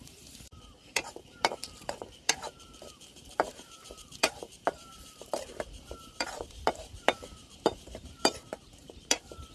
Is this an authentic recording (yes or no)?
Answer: no